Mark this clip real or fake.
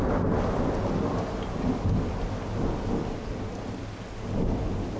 real